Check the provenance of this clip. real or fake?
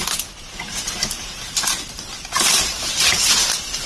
real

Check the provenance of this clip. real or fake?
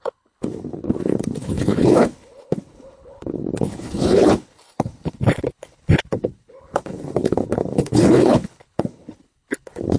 fake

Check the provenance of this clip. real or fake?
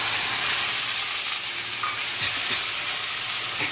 real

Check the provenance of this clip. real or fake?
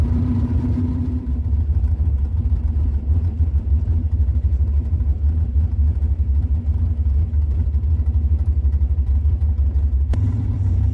fake